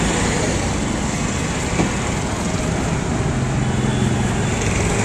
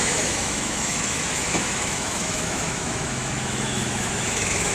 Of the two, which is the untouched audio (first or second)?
first